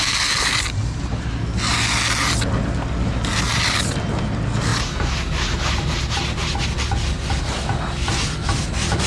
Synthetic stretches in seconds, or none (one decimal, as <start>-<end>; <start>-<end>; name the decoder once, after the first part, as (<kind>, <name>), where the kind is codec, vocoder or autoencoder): none